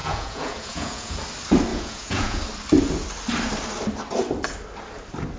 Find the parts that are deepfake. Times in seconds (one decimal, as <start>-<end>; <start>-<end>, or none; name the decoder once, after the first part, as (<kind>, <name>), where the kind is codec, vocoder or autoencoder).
0.0-1.2 (vocoder, Vocos); 1.7-2.4